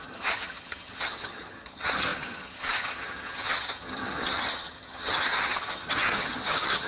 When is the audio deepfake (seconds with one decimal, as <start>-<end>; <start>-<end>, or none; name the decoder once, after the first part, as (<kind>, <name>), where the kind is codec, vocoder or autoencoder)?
0.0-6.9 (vocoder, HiFi-GAN)